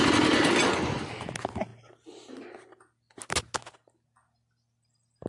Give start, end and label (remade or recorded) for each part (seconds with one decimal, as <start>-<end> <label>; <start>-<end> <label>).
0.0-5.3 recorded

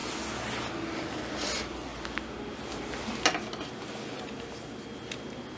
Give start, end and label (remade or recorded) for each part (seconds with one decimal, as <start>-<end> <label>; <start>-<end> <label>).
0.0-0.7 recorded; 0.7-1.9 remade; 1.9-5.6 recorded

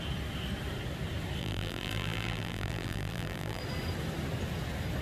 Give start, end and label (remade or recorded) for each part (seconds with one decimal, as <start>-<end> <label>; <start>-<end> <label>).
0.0-1.4 recorded; 1.4-3.6 remade; 3.6-5.0 recorded